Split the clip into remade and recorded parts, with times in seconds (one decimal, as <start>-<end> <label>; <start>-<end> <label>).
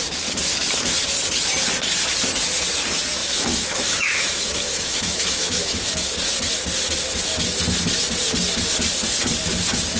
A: 0.0-3.2 recorded; 3.2-5.9 remade; 5.9-10.0 recorded